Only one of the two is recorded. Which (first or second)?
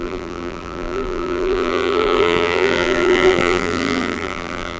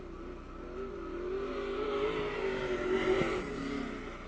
second